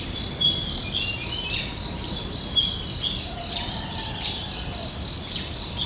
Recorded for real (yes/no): yes